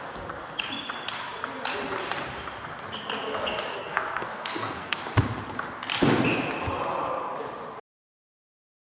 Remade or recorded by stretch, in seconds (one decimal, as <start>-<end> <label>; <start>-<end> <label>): 0.0-3.7 recorded; 3.7-5.0 remade; 5.0-8.8 recorded